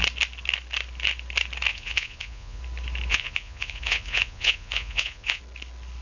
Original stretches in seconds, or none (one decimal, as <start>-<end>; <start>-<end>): 0.0-1.7; 2.6-3.1; 5.4-6.0